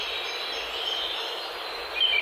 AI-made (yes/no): no